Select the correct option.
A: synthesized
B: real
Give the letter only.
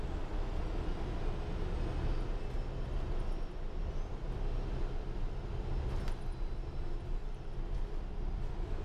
B